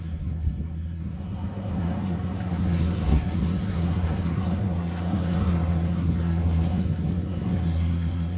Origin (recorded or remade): remade